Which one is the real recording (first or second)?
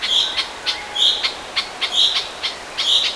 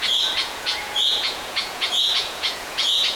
first